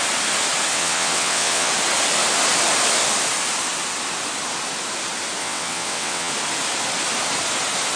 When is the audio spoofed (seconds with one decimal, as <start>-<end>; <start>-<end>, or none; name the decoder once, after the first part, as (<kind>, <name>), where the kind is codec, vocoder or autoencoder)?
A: 0.7-1.7 (vocoder, WaveNeXt); 5.4-6.3